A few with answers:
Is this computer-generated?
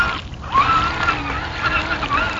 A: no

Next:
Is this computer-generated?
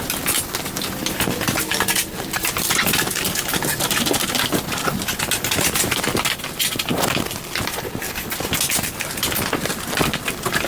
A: no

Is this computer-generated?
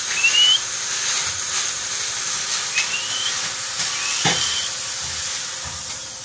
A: no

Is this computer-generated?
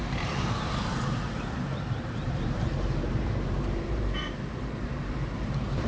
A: yes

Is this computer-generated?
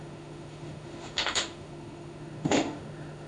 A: yes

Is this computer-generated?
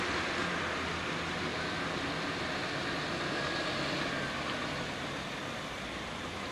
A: no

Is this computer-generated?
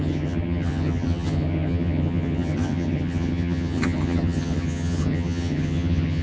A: yes